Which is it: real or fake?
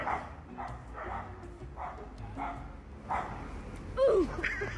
real